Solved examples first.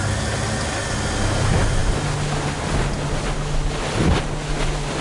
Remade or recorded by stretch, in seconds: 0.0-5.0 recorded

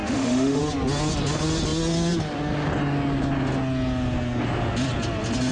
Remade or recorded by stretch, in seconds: 0.0-0.6 remade; 0.6-5.5 recorded